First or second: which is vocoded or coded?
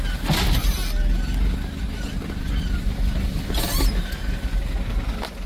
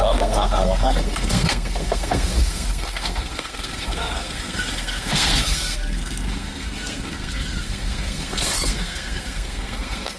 second